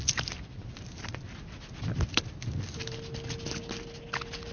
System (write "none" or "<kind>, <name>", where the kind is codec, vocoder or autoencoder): none